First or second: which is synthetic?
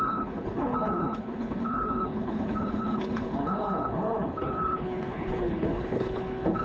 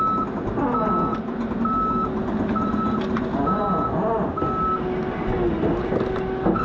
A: first